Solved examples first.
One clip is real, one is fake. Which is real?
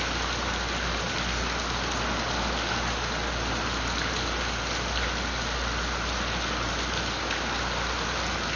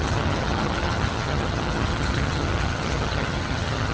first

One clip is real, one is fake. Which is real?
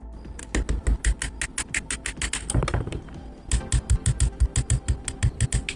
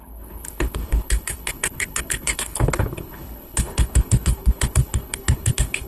first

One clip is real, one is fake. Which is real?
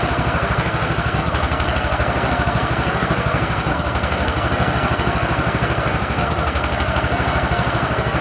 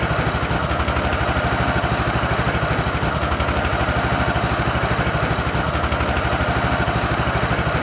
second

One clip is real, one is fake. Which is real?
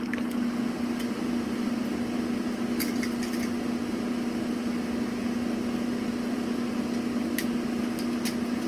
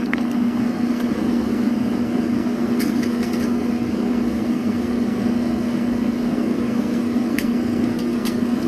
first